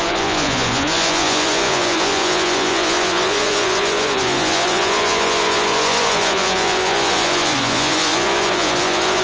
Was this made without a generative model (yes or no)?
no